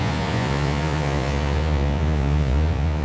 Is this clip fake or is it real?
fake